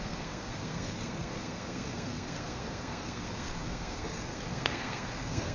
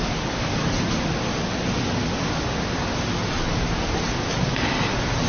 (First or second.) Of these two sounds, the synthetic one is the first